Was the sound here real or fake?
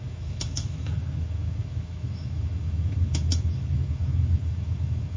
fake